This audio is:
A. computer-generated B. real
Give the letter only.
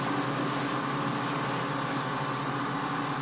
B